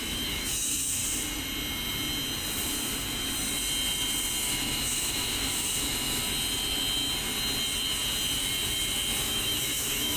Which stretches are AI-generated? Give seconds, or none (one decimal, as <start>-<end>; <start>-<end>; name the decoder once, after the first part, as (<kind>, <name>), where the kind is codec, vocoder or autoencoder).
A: 0.0-1.0 (autoencoder, DAC-VAE); 4.4-6.2; 9.2-10.2